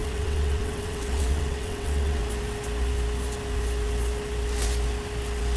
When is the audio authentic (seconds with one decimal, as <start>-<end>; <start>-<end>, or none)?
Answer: 2.2-5.6